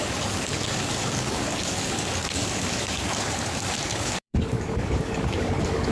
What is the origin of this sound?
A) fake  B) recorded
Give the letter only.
A